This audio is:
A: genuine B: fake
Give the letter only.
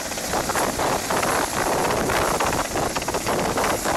A